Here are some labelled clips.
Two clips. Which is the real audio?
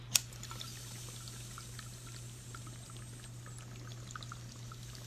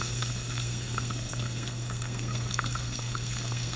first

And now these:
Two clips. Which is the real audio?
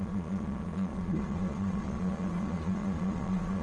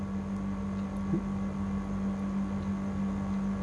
second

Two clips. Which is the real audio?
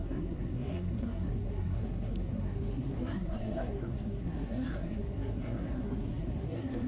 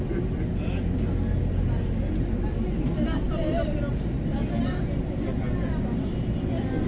second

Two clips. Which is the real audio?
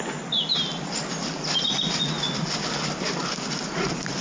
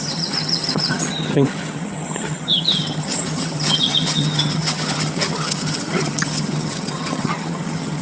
first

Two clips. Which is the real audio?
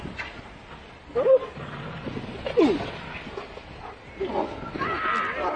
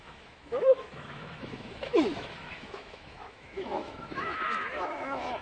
first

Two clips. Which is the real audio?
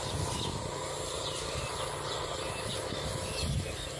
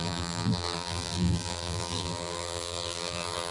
first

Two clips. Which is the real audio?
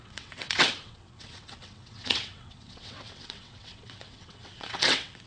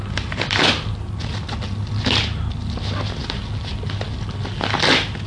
second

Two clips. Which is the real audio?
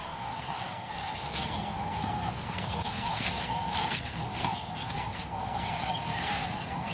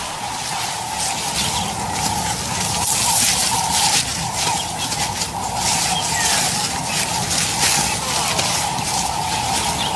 second